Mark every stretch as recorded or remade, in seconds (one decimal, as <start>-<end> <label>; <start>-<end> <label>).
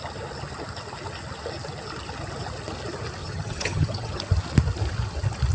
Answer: 0.0-3.2 recorded; 3.2-4.2 remade; 4.2-5.5 recorded